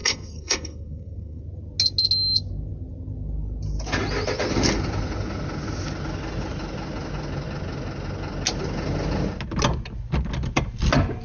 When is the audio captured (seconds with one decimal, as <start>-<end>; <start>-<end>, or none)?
1.4-11.2